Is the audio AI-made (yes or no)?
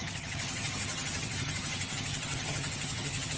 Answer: yes